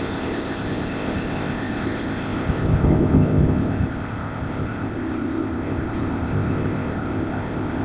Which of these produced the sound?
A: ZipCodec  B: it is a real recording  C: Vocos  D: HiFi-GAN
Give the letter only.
A